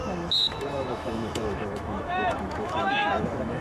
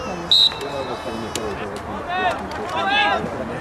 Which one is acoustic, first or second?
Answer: second